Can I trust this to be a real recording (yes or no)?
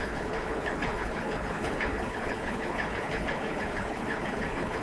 no